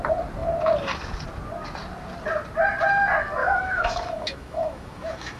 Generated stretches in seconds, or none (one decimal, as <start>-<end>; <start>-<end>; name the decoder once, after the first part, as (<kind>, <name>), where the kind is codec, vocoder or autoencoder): 3.4-5.4 (autoencoder, DAC-VAE)